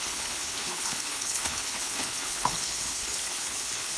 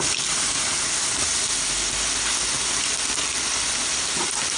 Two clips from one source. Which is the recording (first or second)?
second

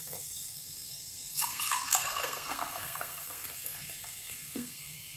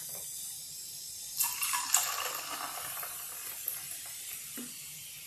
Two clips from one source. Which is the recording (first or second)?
second